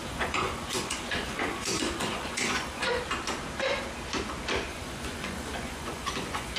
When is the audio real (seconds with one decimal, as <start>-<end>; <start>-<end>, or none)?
3.0-4.7